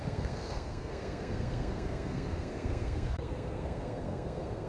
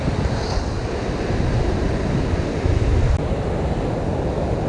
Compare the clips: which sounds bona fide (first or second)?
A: second